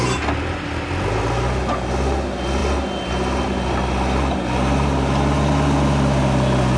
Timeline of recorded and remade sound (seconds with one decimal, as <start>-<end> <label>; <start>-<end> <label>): 0.0-6.8 recorded